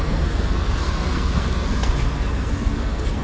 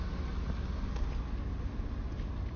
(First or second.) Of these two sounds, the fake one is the first